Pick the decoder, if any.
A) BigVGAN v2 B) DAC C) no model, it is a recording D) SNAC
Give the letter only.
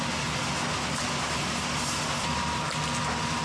C